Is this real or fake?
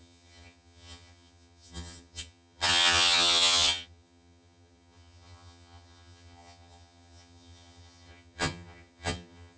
fake